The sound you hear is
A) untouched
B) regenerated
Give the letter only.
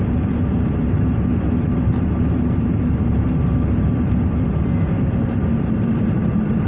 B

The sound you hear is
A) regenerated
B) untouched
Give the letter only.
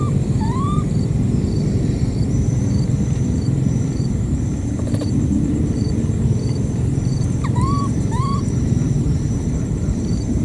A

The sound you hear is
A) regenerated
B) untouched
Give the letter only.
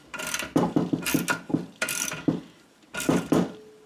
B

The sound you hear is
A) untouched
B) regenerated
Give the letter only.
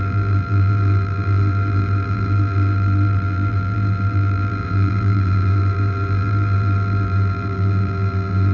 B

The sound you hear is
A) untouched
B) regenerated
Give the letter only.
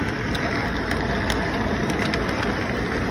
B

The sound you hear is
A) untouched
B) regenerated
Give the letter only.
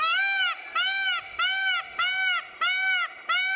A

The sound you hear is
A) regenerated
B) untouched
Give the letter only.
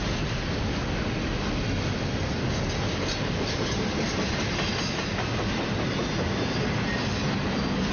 B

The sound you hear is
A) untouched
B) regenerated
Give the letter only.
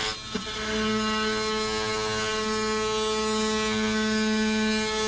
A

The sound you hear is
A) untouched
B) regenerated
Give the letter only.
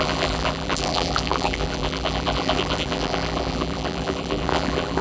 B